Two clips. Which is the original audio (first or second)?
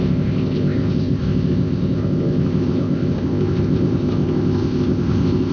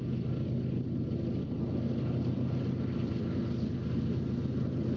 second